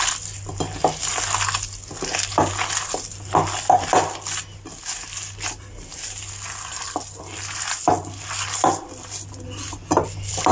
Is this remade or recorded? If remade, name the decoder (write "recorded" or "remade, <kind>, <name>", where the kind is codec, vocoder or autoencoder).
recorded